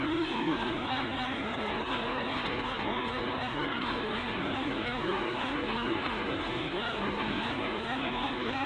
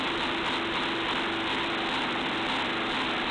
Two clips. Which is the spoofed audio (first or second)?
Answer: first